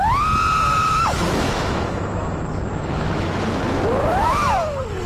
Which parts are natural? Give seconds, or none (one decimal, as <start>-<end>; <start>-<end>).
0.0-0.7; 3.8-5.1